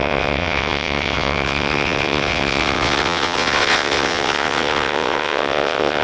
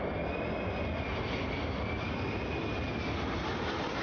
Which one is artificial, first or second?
first